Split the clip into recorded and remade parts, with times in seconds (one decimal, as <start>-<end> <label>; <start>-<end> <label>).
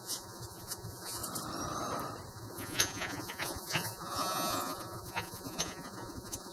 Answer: 0.0-1.2 remade; 1.2-2.3 recorded; 2.3-6.5 remade